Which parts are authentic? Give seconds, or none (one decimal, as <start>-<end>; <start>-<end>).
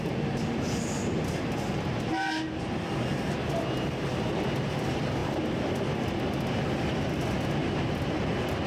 0.0-8.7